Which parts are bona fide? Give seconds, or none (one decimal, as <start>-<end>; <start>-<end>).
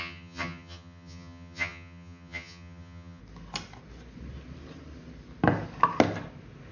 3.2-6.7